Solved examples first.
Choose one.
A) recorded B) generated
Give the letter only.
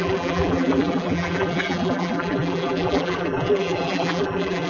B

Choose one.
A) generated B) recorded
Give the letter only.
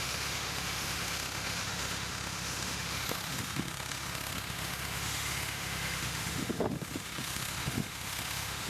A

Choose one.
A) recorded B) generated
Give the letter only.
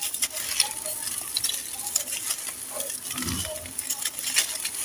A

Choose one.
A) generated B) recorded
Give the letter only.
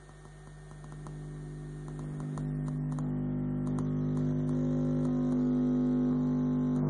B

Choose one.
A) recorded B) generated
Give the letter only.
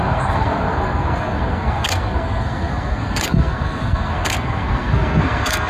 B